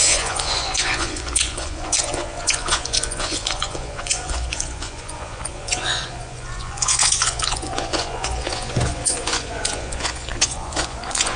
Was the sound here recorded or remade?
remade